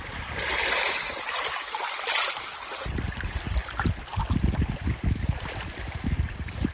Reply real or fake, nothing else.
real